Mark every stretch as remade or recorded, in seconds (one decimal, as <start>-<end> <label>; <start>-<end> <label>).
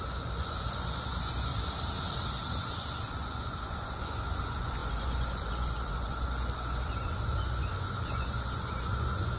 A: 0.0-1.5 remade; 1.5-2.6 recorded; 2.6-9.4 remade